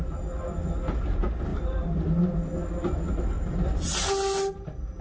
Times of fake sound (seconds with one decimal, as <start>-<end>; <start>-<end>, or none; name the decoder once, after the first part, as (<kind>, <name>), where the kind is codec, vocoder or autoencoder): none